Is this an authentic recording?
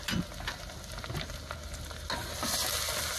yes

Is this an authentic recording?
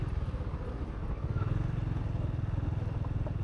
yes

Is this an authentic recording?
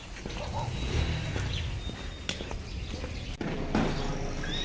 yes